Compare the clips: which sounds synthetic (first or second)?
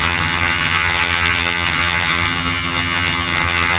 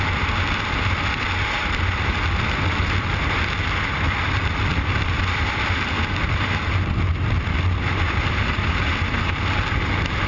first